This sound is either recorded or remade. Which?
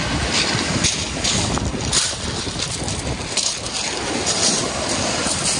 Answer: recorded